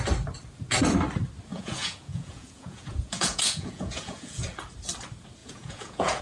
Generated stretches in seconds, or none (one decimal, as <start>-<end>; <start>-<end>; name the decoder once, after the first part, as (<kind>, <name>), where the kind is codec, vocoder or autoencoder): 1.5-4.4 (vocoder, Vocos); 5.4-6.2